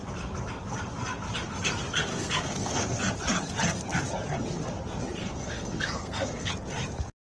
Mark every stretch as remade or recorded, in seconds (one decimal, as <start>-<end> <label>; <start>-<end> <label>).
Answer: 0.0-2.1 recorded; 2.1-3.0 remade; 3.0-5.2 recorded; 5.2-6.5 remade; 6.5-7.2 recorded